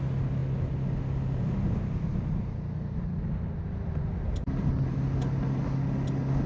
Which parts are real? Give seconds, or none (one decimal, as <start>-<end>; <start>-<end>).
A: 0.0-6.5